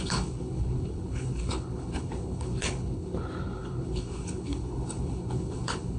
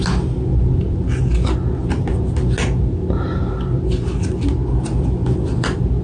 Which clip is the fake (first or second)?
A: first